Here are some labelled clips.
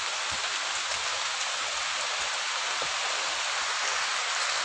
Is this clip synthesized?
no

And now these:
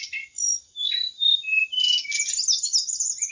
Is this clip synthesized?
no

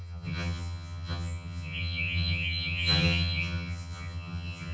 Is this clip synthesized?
yes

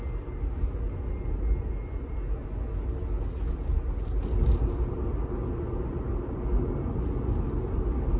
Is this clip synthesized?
no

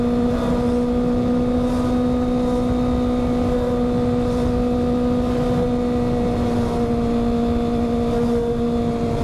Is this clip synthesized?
no